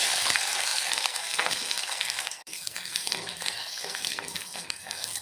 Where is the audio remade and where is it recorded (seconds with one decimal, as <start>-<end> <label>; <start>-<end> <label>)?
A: 0.0-5.2 remade